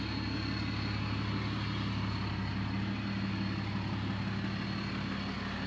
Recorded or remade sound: recorded